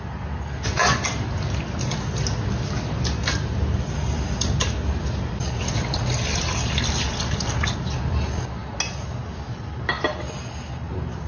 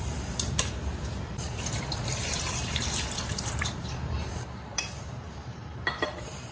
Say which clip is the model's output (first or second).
second